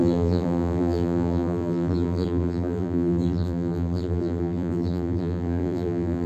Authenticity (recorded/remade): remade